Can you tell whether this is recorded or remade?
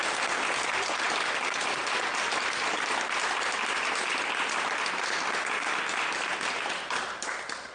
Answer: recorded